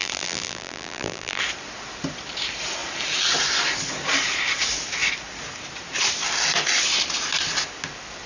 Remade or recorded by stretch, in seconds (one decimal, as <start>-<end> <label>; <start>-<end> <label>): 0.0-1.4 remade; 1.4-8.3 recorded